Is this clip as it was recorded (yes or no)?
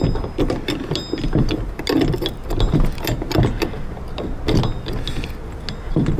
yes